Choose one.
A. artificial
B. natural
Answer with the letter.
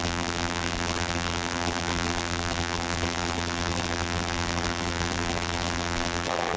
A